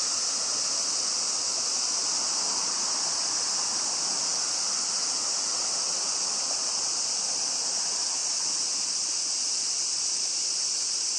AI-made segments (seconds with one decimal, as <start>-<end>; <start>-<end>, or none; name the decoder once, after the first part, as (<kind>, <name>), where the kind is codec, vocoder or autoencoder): none